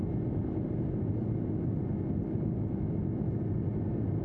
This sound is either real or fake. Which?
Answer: real